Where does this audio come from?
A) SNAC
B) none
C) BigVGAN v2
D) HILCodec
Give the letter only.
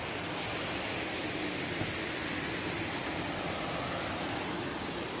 B